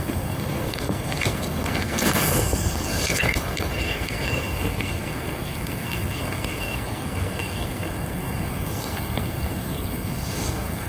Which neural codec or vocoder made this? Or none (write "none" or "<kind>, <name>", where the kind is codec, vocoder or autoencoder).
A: codec, SNAC